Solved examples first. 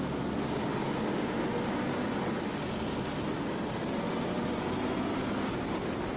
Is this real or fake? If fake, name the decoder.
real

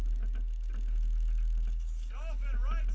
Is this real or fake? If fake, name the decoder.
real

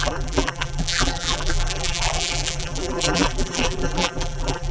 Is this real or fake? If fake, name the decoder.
fake, vocoder, BigVGAN v2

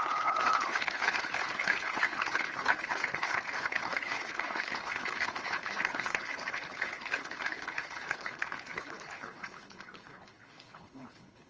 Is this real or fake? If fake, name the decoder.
fake, codec, HILCodec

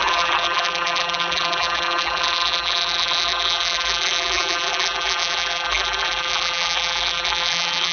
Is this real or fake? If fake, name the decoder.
fake, vocoder, BigVGAN v2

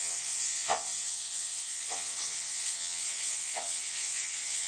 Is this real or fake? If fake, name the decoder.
fake, vocoder, WaveNeXt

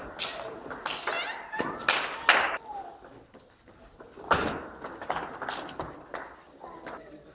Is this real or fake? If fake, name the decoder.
real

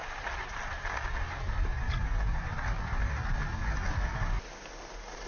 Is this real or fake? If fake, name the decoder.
real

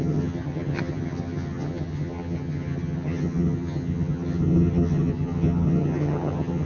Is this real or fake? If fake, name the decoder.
fake, vocoder, HiFi-GAN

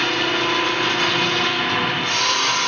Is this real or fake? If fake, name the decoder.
real